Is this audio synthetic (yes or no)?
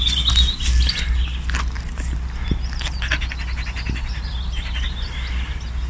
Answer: no